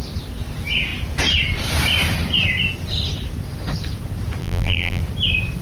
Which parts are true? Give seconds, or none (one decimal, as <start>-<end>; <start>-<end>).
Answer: 0.0-4.4; 5.0-5.6